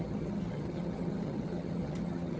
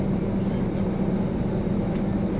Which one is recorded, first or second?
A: second